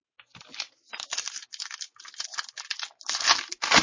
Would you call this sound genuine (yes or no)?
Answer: yes